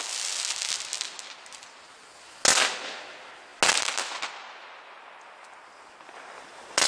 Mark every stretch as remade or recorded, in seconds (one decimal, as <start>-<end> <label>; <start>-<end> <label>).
0.0-6.9 recorded